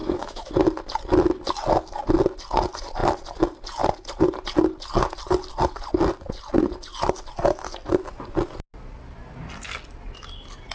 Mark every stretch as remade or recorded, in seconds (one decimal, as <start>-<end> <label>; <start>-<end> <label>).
0.0-0.5 remade; 0.5-10.7 recorded